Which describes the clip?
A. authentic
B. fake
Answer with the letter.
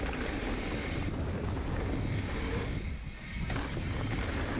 A